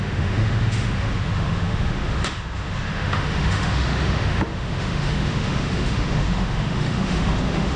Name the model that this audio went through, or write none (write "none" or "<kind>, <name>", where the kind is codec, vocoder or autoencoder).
autoencoder, DAC-VAE